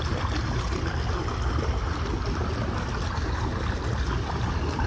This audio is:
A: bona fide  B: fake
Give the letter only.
A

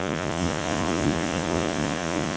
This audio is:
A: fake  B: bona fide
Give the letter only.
A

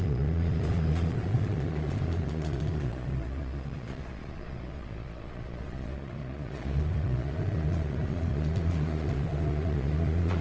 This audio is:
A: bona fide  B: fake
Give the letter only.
B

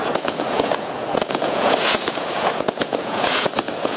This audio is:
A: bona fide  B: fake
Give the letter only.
B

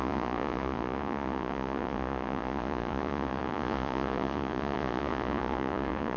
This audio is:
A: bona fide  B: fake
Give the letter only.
B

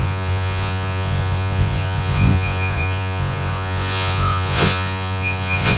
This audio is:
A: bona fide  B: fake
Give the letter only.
B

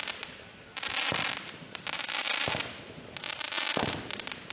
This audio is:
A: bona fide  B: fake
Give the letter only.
A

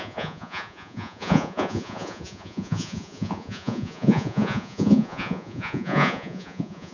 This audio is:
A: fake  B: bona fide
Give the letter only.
A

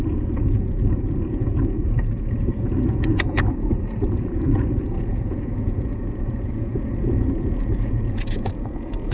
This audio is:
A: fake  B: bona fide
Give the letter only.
A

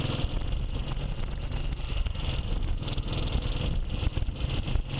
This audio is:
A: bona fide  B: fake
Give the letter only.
A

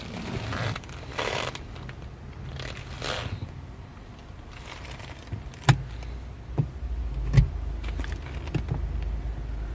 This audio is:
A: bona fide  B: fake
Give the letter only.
A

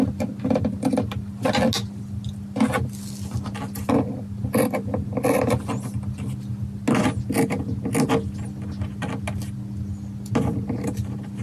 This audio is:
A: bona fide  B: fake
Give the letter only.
A